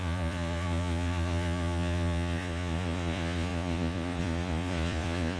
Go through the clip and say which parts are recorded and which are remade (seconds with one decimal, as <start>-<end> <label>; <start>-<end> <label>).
0.0-5.4 remade